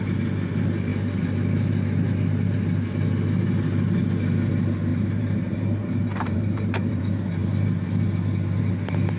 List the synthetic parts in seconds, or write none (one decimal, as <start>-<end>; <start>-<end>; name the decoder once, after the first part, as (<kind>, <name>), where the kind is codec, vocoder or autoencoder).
4.9-7.0 (vocoder, BigVGAN v2)